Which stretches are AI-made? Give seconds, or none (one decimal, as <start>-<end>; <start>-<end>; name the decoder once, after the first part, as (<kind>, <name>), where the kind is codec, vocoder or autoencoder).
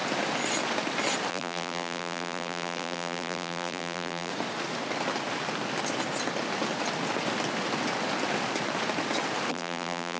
1.3-4.3 (vocoder, BigVGAN v2); 9.5-10.2